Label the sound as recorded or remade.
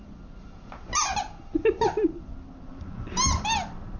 recorded